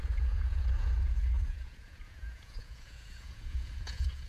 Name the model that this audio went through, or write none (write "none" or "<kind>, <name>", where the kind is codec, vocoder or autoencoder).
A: vocoder, Vocos